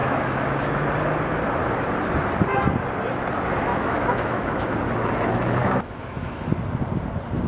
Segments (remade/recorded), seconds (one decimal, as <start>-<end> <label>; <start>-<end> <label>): 0.0-0.9 remade; 0.9-3.7 recorded; 3.7-4.8 remade; 4.8-5.6 recorded; 5.6-6.5 remade; 6.5-7.5 recorded